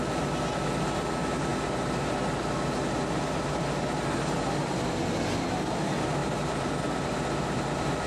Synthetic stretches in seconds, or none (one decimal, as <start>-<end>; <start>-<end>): 6.2-6.7